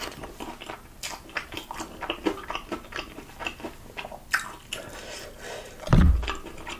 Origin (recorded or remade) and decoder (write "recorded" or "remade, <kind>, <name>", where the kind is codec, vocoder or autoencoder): recorded